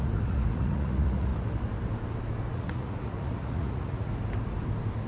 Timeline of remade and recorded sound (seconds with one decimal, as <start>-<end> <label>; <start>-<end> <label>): 0.0-1.3 remade; 1.3-2.5 recorded; 2.5-4.1 remade; 4.1-5.1 recorded